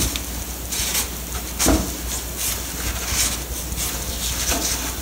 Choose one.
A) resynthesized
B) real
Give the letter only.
B